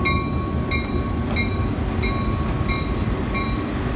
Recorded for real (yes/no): yes